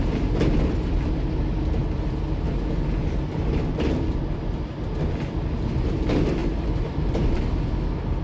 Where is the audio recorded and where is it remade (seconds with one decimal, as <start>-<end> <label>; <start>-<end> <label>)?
0.0-6.4 recorded; 6.4-7.7 remade; 7.7-8.2 recorded